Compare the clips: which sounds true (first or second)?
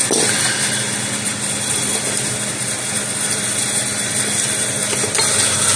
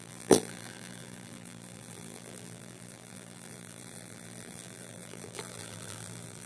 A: first